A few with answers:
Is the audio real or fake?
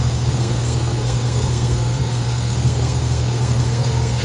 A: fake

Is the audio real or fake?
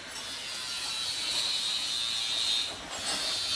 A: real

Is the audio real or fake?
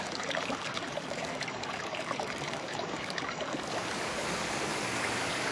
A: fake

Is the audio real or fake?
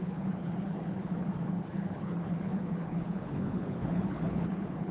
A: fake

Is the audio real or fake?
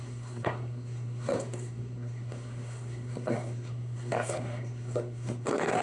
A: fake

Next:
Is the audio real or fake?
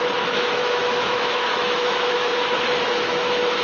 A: fake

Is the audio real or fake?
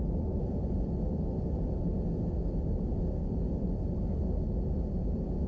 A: fake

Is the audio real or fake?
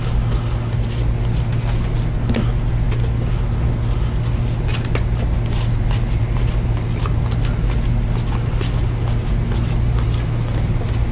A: real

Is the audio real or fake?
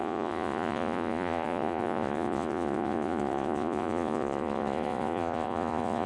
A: fake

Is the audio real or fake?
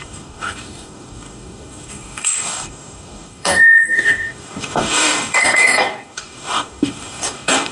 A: fake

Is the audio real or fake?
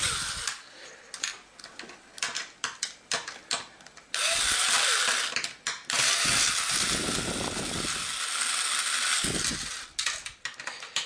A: real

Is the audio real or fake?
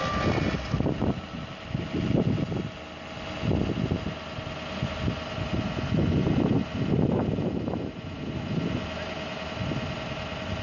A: real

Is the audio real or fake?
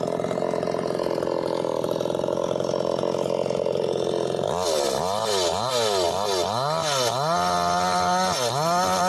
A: real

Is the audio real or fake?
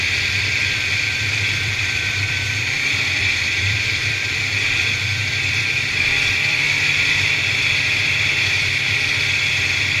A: fake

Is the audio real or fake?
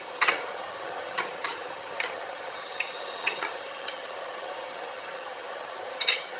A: fake